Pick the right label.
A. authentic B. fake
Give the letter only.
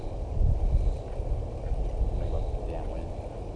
A